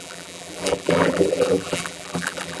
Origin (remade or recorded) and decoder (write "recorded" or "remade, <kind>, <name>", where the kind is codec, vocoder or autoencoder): remade, vocoder, BigVGAN v2